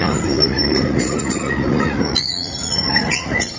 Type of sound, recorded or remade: remade